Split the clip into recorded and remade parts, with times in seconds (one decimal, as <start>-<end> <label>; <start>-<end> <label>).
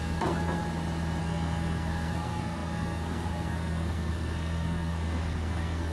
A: 0.0-0.6 remade; 0.6-1.2 recorded; 1.2-5.9 remade